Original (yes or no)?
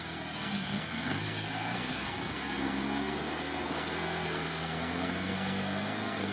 no